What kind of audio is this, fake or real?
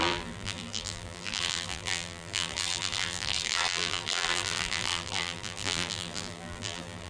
fake